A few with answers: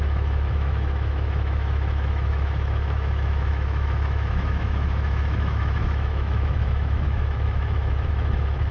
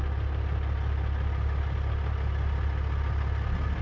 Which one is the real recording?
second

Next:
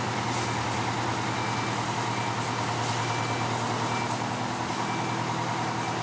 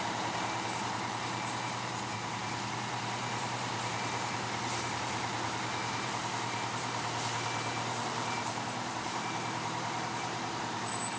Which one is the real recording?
first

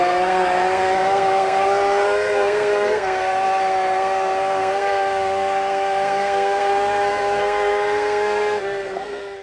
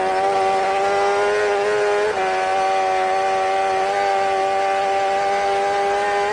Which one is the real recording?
second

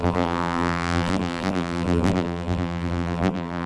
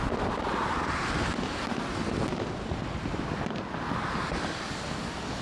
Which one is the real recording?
second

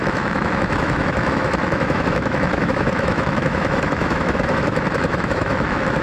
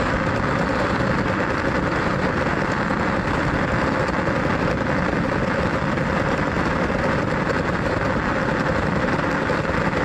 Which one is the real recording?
second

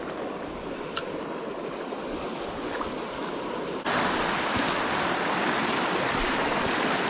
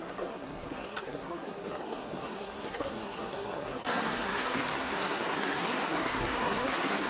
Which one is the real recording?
first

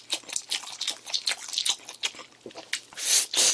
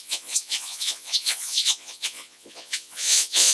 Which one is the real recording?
first